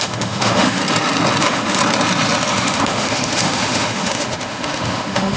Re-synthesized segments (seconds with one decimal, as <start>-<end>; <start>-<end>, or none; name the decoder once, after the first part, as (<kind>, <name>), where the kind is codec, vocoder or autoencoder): 0.0-0.8 (autoencoder, DAC-VAE); 1.4-1.8; 2.5-5.4